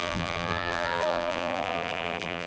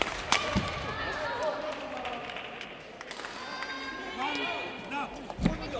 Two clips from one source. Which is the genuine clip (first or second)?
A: second